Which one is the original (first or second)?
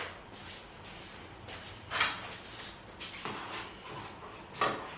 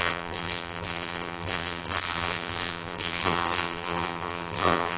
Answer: first